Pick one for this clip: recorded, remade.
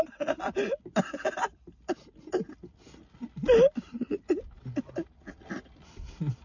recorded